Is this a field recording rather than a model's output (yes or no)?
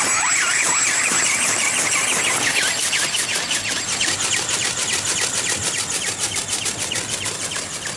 yes